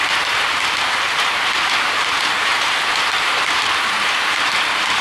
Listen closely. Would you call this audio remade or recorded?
remade